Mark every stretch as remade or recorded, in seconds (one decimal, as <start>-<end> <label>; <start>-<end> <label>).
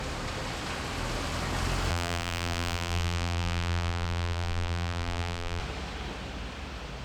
0.0-1.9 recorded; 1.9-5.6 remade; 5.6-7.0 recorded